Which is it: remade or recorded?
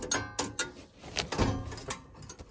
recorded